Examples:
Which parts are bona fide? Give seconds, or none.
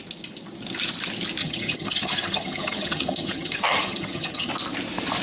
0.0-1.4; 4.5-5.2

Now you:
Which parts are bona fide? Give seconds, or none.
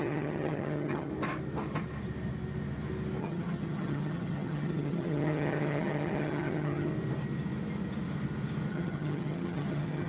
1.1-3.2; 6.9-8.7